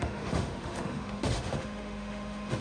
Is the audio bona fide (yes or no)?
no